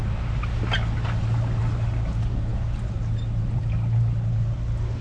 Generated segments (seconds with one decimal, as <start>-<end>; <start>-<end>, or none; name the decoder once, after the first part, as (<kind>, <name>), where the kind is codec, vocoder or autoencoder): none